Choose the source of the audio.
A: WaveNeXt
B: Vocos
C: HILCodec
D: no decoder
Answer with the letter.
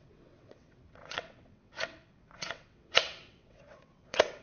A